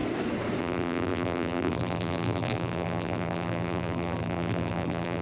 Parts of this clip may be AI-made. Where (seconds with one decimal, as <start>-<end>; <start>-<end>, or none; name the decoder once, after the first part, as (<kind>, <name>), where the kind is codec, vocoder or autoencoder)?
0.6-5.2 (vocoder, BigVGAN v2)